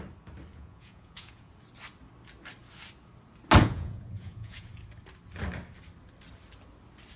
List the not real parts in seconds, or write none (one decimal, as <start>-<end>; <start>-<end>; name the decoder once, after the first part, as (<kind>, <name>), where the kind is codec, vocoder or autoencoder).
0.5-1.5 (vocoder, Vocos); 3.6-4.7

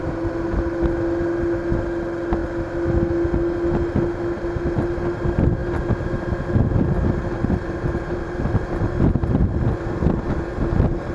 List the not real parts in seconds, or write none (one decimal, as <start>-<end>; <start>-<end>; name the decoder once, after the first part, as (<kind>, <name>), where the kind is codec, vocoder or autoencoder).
none

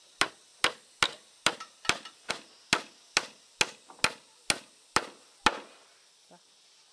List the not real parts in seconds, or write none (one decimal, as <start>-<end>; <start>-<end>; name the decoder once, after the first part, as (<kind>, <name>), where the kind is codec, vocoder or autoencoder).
none

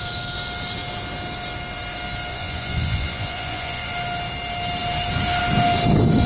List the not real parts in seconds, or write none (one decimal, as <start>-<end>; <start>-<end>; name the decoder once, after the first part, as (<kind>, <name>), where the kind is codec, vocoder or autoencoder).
2.3-3.9 (vocoder, Vocos)

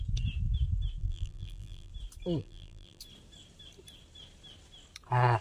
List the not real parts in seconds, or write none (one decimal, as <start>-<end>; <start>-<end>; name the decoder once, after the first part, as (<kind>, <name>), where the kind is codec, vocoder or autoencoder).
1.0-1.9 (vocoder, BigVGAN v2); 2.4-3.0

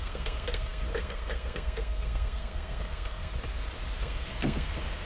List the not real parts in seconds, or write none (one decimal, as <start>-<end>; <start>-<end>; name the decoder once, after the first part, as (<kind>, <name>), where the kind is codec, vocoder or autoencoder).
0.0-3.3 (codec, SNAC); 4.0-5.1

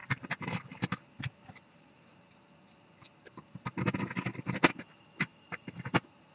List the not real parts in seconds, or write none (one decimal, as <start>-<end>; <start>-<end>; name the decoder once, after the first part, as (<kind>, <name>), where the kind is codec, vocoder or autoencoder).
0.0-3.8 (vocoder, BigVGAN v2); 5.3-6.3

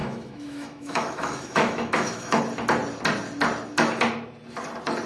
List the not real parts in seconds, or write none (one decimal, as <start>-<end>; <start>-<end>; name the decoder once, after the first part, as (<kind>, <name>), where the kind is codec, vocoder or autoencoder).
0.0-2.4 (autoencoder, DAC-VAE)